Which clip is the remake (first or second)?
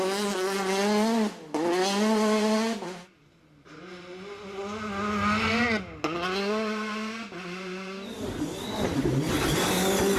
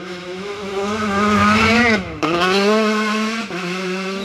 second